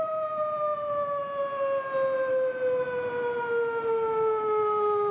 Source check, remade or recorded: recorded